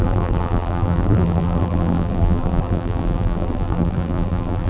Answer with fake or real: fake